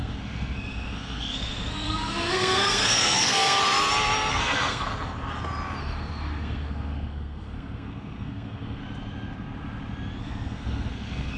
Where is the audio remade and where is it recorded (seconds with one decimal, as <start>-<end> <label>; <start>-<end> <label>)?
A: 0.0-3.6 remade; 3.6-4.3 recorded; 4.3-4.9 remade; 4.9-5.8 recorded; 5.8-8.8 remade; 8.8-10.2 recorded; 10.2-11.4 remade